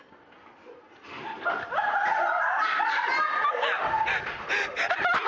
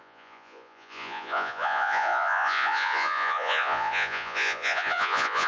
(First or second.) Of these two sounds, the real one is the first